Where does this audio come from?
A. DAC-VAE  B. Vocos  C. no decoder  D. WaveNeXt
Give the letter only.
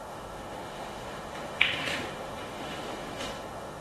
A